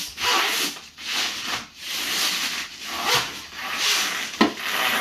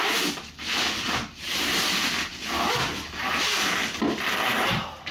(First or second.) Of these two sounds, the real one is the first